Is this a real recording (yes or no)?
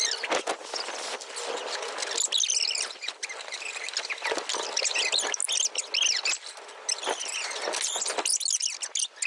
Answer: yes